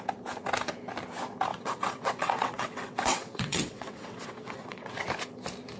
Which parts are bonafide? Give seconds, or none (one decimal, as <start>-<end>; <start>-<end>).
0.0-1.5; 5.0-5.8